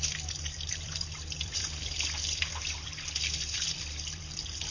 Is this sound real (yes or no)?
no